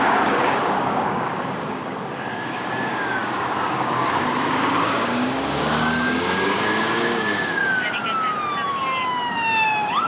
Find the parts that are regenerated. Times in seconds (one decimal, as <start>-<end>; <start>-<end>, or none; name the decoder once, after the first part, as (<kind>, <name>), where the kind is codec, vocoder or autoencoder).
0.0-7.6 (codec, DAC); 9.3-10.1